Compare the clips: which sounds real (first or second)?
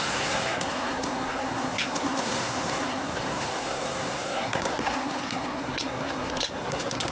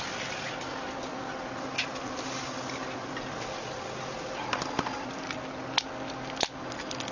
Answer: second